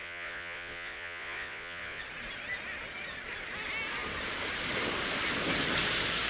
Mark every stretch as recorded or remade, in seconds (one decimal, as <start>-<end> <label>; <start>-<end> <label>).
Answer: 0.0-2.0 remade; 2.0-6.3 recorded